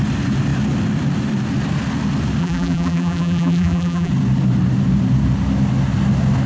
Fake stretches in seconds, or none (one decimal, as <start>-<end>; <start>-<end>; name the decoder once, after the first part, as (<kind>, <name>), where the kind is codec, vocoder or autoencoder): 2.4-4.1 (vocoder, BigVGAN v2)